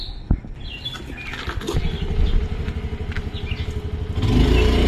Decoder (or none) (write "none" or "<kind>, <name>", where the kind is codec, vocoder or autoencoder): none